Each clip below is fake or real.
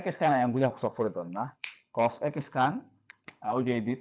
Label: fake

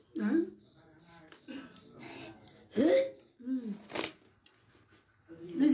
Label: real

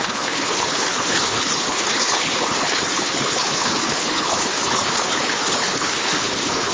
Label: fake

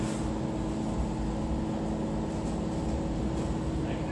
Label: real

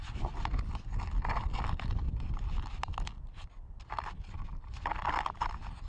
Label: real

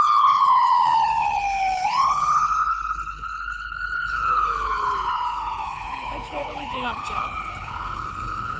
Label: fake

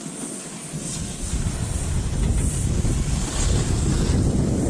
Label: real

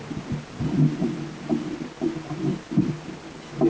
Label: real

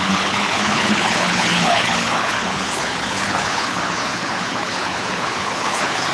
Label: fake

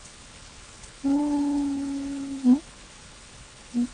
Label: fake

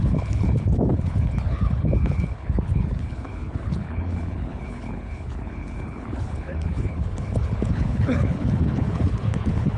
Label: fake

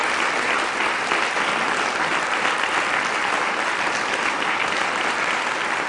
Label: real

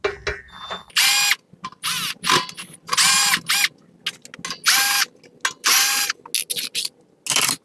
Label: real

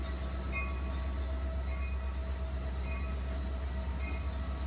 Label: real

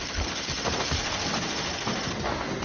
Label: real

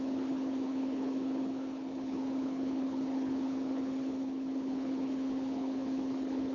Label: fake